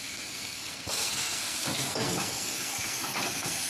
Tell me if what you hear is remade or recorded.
remade